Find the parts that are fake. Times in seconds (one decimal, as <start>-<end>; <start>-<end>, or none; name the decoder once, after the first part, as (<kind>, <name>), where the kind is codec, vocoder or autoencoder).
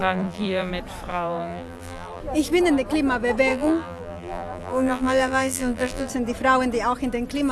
0.0-0.7 (vocoder, BigVGAN v2); 1.1-2.2; 3.5-6.1